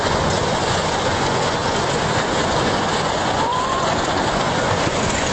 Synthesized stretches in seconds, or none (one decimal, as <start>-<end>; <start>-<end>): 0.0-5.3